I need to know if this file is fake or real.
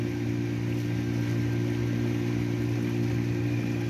real